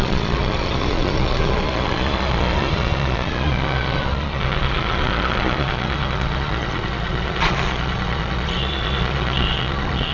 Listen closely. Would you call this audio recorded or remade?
remade